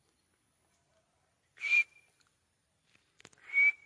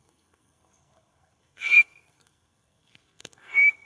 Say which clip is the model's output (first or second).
second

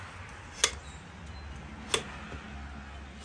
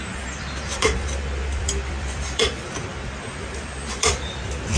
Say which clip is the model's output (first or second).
second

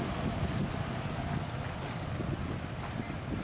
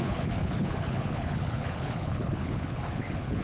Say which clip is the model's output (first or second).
second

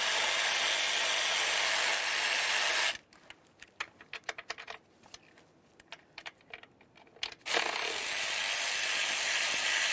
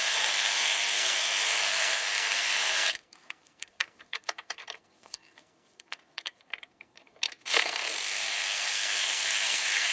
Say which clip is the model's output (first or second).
second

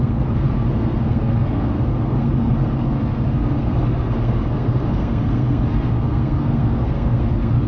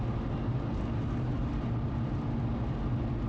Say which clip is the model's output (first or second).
first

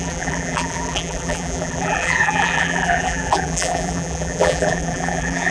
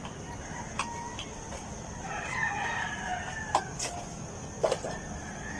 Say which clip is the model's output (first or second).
first